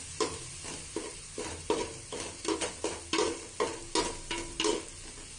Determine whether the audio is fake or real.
real